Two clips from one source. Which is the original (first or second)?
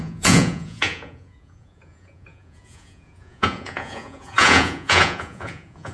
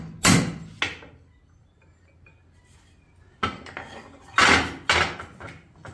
second